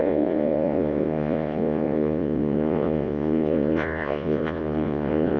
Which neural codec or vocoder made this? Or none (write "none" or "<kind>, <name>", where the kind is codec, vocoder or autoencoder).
vocoder, Vocos